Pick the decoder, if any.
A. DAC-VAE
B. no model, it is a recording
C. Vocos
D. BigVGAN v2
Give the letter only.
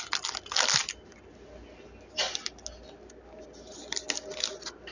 B